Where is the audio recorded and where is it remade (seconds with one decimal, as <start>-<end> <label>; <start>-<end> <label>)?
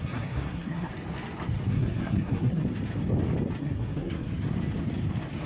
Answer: 0.0-0.9 remade; 0.9-1.7 recorded; 1.7-2.6 remade; 2.6-3.6 recorded; 3.6-4.3 remade; 4.3-5.5 recorded